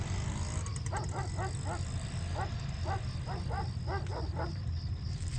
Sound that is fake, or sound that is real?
real